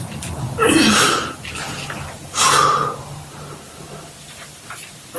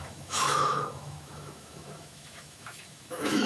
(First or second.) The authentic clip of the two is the first